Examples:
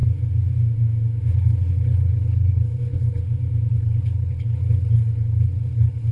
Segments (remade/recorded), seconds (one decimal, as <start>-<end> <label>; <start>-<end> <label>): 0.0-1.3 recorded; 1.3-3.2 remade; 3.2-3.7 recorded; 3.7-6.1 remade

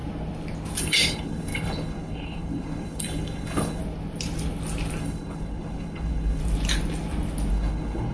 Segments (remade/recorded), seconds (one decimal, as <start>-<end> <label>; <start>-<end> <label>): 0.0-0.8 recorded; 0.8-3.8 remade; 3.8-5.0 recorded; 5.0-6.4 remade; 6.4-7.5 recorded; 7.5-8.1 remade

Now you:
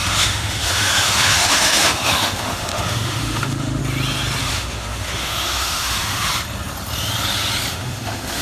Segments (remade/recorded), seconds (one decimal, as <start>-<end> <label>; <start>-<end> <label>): 0.0-3.8 remade; 3.8-4.4 recorded; 4.4-6.3 remade; 6.3-7.7 recorded; 7.7-8.4 remade